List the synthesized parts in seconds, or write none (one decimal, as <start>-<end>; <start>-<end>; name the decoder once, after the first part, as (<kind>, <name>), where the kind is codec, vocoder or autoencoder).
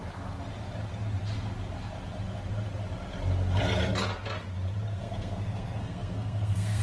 4.9-6.8 (codec, SNAC)